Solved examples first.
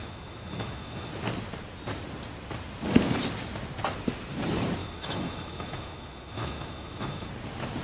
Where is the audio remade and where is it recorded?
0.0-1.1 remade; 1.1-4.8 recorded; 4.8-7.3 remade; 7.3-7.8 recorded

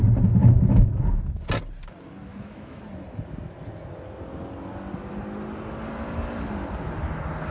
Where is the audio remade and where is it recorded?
0.0-0.4 recorded; 0.4-0.9 remade; 0.9-2.3 recorded; 2.3-2.8 remade; 2.8-7.5 recorded